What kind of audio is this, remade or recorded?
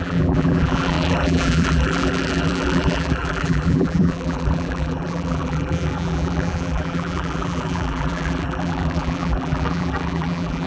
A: remade